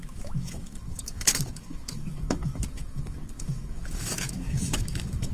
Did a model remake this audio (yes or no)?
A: yes